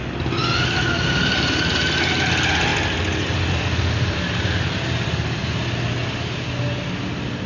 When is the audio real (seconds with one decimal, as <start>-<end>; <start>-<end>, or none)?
0.0-7.5